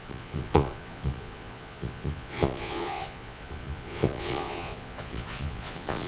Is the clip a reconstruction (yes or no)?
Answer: yes